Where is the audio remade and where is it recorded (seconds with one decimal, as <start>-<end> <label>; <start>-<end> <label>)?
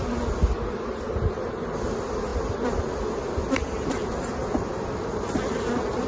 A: 0.0-6.1 recorded